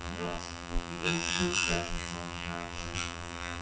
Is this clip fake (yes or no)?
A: yes